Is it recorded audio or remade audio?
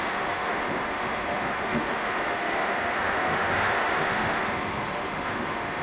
remade